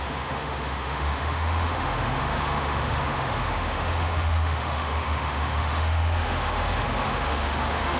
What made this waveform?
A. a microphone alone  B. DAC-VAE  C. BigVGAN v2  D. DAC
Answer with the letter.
B